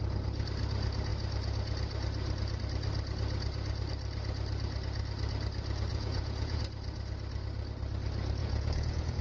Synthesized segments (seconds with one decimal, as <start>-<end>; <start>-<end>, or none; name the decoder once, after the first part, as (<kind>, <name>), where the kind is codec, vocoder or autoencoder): 5.9-6.6 (vocoder, Vocos); 8.4-9.2